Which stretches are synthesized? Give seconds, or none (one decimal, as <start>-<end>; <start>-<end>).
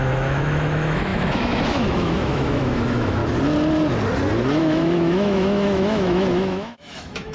0.0-3.2; 4.6-7.3